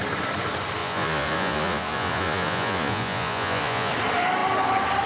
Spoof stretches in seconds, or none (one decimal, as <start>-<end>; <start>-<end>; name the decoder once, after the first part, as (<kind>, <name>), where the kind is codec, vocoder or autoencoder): 0.8-3.9 (vocoder, Vocos)